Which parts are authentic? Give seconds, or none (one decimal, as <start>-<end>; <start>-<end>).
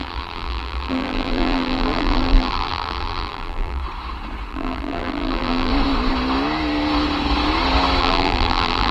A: 3.8-4.5; 5.7-8.0